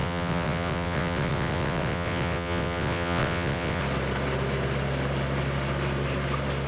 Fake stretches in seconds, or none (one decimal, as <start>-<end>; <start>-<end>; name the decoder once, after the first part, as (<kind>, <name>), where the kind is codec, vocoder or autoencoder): 0.0-3.8 (vocoder, WaveNeXt)